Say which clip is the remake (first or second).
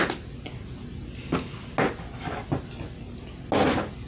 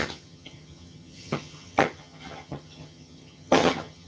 second